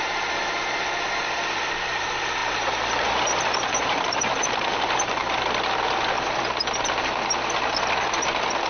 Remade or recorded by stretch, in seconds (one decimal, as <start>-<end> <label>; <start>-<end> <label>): 0.0-5.2 remade; 5.2-8.7 recorded